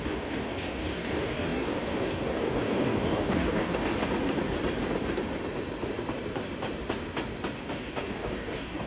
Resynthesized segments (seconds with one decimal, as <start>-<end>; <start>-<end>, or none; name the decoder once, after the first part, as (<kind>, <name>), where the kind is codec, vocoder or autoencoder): 0.0-3.9 (codec, DAC); 7.6-8.9